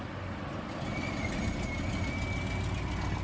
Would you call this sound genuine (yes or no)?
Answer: yes